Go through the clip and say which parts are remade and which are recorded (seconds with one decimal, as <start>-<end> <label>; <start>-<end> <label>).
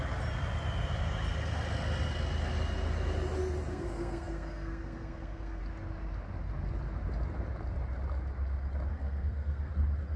0.0-3.7 recorded; 3.7-5.6 remade; 5.6-8.9 recorded; 8.9-9.7 remade; 9.7-10.2 recorded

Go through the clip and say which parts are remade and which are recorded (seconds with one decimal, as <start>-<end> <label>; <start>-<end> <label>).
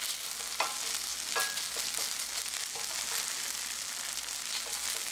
0.0-5.1 recorded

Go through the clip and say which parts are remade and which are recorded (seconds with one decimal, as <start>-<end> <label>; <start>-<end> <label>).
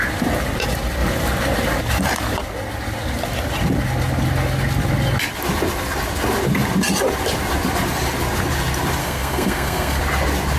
0.0-9.0 recorded; 9.0-10.0 remade; 10.0-10.6 recorded